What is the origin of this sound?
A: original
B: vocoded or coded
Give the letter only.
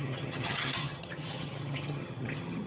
B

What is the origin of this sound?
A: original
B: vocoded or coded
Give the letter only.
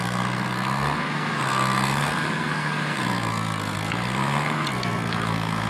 B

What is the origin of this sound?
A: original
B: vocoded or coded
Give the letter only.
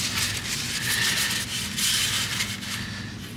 A